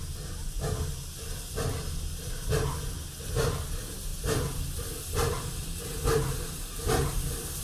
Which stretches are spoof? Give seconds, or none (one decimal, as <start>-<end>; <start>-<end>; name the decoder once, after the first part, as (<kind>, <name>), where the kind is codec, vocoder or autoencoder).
none

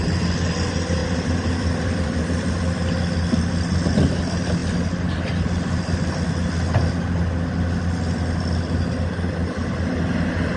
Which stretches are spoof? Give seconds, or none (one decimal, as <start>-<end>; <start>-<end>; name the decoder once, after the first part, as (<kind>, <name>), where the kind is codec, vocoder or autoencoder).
1.0-2.5 (vocoder, BigVGAN v2)